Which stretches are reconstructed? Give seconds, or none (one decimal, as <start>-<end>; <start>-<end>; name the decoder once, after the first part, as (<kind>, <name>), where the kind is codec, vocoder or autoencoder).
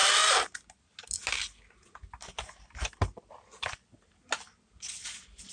none